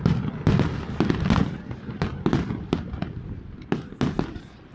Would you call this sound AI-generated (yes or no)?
no